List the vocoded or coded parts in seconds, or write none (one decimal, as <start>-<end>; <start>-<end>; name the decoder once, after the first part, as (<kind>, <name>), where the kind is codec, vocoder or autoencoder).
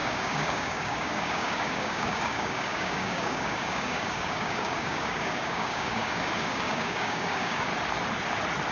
0.0-7.7 (codec, DAC)